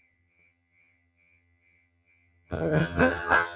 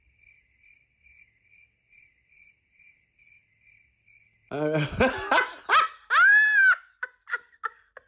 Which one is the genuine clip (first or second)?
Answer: second